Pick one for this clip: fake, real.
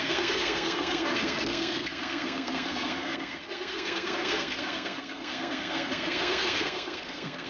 fake